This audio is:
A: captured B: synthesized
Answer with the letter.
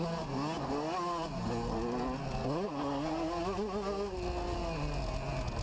A